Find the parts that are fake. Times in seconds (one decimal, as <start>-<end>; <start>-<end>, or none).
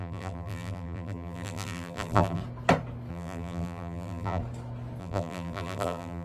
0.0-2.4; 3.1-4.4; 5.0-6.2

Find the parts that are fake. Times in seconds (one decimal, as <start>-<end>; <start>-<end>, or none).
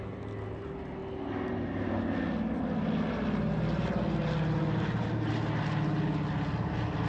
none